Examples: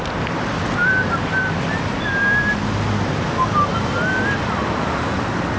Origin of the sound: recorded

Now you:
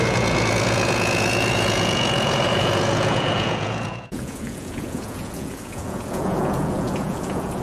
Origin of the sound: remade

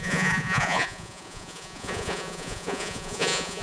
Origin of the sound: remade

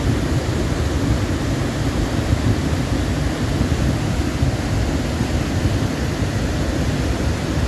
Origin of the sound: recorded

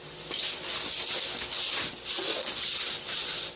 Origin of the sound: recorded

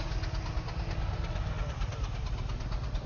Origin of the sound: recorded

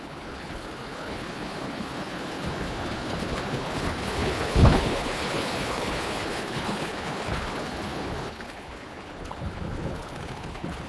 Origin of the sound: remade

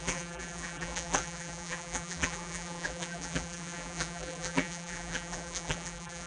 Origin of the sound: remade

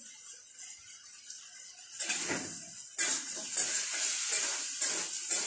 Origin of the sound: recorded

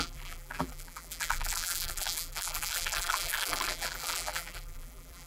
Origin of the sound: remade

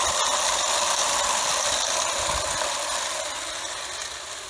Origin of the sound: recorded